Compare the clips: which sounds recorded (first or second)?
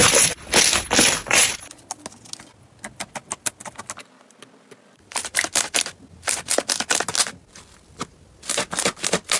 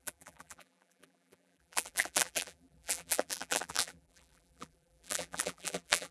first